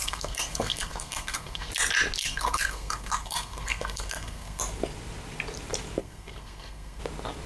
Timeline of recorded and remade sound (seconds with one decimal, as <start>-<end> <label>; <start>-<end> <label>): 0.0-1.7 remade; 1.7-2.2 recorded; 2.2-4.6 remade; 4.6-6.0 recorded; 6.0-7.0 remade; 7.0-7.5 recorded